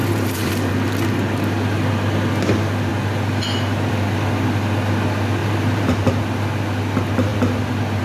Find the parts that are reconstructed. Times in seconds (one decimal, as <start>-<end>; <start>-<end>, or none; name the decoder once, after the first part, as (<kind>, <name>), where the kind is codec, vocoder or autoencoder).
0.0-0.7 (vocoder, BigVGAN v2); 5.4-6.1